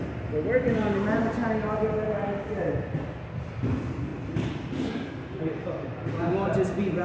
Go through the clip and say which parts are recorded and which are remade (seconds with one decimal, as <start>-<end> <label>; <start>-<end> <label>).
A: 0.0-7.0 recorded

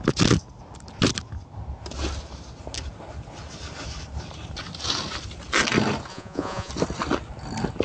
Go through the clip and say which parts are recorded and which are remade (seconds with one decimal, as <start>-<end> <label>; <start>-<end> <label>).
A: 0.0-6.1 recorded; 6.1-6.7 remade; 6.7-7.8 recorded